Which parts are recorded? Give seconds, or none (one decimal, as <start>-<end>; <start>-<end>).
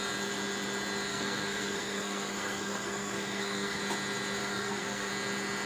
0.0-1.1; 3.8-4.4; 5.1-5.7